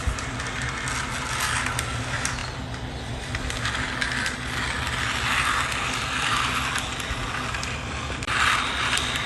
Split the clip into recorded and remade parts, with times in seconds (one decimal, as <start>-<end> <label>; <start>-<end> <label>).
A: 0.0-9.3 recorded